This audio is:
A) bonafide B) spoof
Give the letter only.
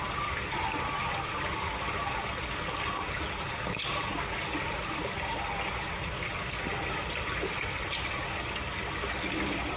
A